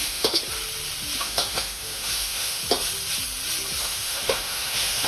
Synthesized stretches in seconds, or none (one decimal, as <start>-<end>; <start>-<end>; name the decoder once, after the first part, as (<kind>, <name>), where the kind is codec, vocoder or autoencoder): 0.0-0.4 (autoencoder, DAC-VAE); 1.2-2.6; 3.8-5.1